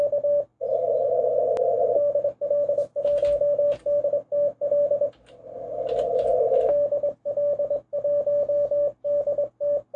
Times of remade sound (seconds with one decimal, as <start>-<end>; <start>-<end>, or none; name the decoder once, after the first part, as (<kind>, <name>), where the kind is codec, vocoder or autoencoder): none